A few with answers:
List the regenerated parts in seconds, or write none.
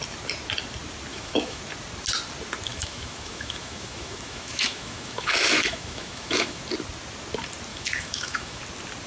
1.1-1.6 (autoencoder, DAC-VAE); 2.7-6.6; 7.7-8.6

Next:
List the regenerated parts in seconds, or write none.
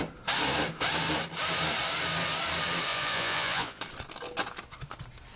2.9-3.8 (vocoder, Vocos)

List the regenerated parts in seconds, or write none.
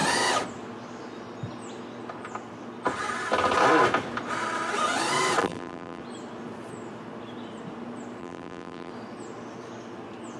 5.4-6.0 (vocoder, BigVGAN v2); 8.2-8.9